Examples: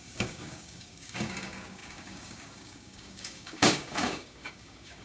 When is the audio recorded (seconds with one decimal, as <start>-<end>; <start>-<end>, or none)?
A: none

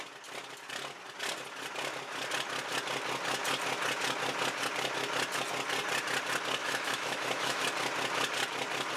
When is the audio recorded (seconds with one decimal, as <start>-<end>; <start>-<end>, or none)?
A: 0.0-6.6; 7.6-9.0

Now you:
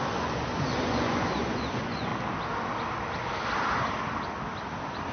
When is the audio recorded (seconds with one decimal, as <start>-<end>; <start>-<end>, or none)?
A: 2.1-5.1

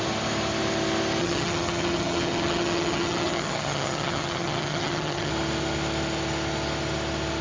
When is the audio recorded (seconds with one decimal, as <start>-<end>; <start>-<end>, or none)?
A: 0.0-1.2; 5.3-7.4

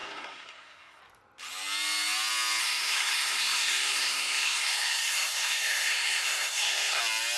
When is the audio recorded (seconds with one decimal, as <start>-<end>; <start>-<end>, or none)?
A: 1.0-2.6; 7.0-7.4